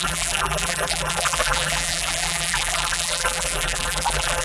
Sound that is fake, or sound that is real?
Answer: fake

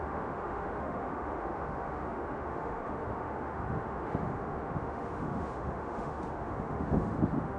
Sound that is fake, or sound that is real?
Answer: fake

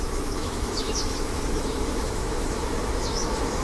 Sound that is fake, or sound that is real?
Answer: fake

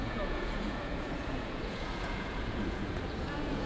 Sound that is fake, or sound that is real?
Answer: fake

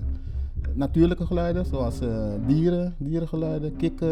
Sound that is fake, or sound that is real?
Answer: real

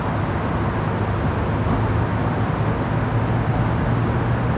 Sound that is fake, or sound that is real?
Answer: real